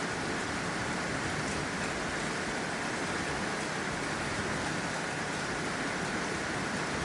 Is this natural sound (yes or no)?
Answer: yes